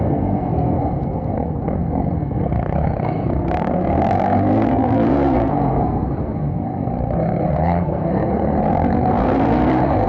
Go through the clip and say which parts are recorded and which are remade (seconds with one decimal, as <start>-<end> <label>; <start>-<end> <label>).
0.0-10.1 remade